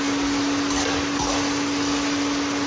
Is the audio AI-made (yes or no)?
no